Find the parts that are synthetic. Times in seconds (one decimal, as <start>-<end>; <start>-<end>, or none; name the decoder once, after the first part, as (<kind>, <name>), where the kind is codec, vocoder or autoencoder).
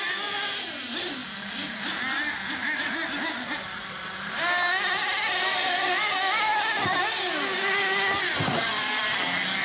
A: none